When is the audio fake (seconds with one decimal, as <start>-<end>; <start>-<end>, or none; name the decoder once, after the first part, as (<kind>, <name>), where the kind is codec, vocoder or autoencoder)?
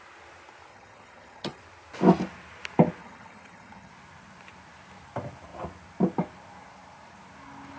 0.7-1.6 (vocoder, HiFi-GAN); 3.0-3.9